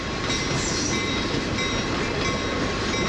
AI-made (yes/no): no